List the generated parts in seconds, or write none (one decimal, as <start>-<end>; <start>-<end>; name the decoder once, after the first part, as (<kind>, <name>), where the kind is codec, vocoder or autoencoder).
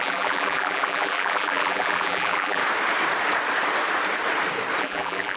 0.0-2.6 (vocoder, BigVGAN v2); 4.8-5.4